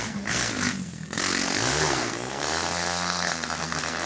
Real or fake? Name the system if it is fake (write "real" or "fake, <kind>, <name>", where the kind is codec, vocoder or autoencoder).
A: fake, codec, SNAC